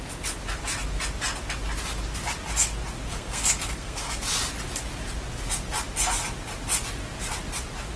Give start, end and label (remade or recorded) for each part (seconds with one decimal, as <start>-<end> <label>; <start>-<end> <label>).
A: 0.0-3.1 recorded; 3.1-4.1 remade; 4.1-8.0 recorded